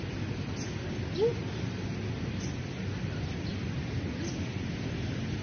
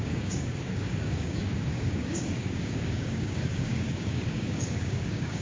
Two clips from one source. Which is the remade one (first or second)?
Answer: second